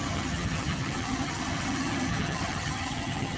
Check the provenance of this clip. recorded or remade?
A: remade